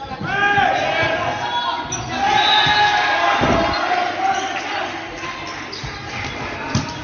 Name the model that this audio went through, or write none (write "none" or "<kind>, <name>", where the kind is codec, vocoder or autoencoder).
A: none